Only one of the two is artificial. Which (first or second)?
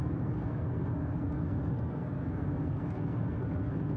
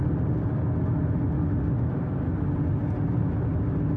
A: first